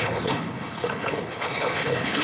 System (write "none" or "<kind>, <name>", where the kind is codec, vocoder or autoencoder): codec, HILCodec